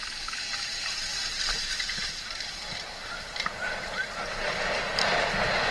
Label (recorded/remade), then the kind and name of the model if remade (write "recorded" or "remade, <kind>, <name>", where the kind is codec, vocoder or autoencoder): remade, vocoder, BigVGAN v2